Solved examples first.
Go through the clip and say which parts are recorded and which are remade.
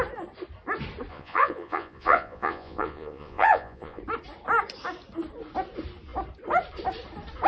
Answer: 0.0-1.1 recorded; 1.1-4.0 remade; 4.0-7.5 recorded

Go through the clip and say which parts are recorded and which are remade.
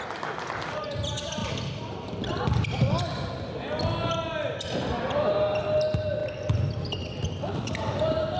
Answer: 0.0-8.4 recorded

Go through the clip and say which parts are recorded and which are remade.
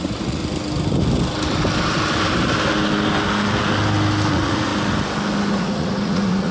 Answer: 0.0-0.4 remade; 0.4-4.3 recorded; 4.3-4.7 remade; 4.7-5.5 recorded; 5.5-6.5 remade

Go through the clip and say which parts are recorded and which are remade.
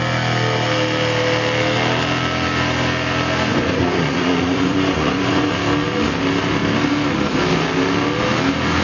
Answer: 0.0-3.5 recorded; 3.5-5.5 remade; 5.5-8.8 recorded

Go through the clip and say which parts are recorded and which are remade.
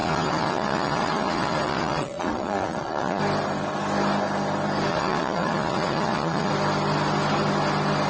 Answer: 0.0-3.2 remade; 3.2-4.9 recorded; 4.9-6.5 remade; 6.5-8.1 recorded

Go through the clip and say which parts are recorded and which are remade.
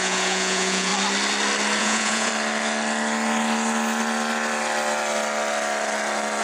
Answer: 0.0-0.9 remade; 0.9-1.8 recorded; 1.8-2.3 remade; 2.3-6.4 recorded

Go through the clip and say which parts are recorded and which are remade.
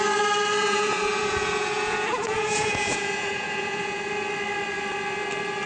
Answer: 0.0-0.6 recorded; 0.6-4.0 remade; 4.0-5.7 recorded